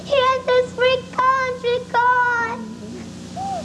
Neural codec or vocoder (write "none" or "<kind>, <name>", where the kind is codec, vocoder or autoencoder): none